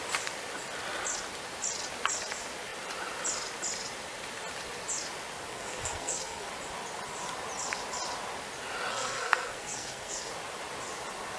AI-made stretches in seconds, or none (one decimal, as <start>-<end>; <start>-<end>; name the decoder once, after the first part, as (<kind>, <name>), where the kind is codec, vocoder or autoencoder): 5.5-6.5 (codec, SNAC); 8.9-10.3